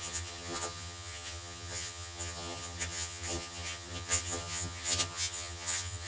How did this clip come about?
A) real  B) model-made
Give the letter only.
B